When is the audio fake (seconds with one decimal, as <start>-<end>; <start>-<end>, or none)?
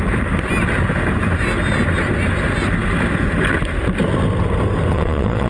4.9-5.5